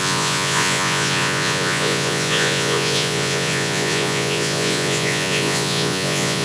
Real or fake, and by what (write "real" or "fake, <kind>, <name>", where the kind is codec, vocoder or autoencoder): fake, vocoder, Vocos